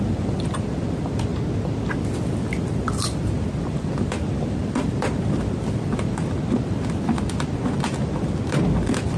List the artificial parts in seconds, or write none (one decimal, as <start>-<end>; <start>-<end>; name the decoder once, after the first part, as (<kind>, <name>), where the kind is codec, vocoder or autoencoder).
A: 0.0-1.3 (vocoder, BigVGAN v2); 2.6-9.2